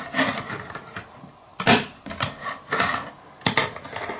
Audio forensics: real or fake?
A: real